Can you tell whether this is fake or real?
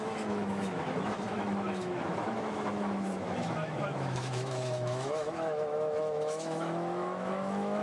fake